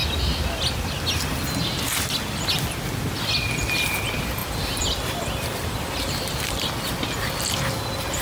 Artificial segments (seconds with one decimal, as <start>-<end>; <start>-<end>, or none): 4.4-6.7